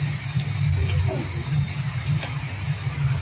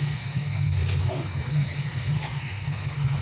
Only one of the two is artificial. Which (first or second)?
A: second